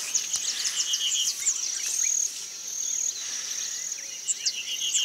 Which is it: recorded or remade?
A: recorded